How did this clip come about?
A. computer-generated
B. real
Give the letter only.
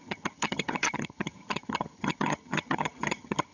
A